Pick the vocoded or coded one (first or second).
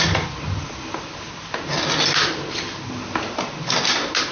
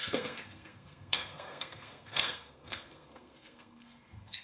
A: second